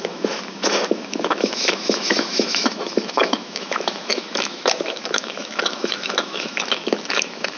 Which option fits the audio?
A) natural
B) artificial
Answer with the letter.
B